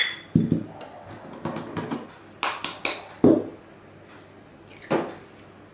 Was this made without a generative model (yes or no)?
yes